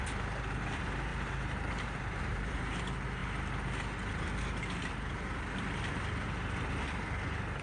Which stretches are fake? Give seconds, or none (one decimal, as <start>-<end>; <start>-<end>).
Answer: 1.1-2.8